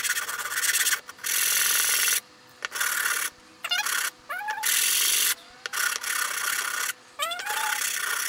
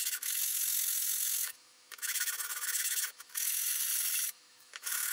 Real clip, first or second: first